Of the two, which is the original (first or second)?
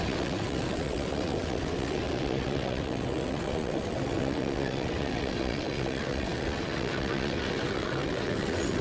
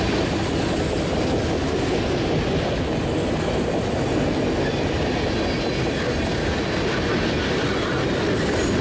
second